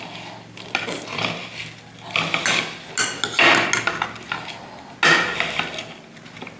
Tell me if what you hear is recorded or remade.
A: recorded